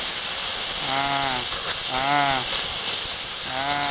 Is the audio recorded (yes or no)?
yes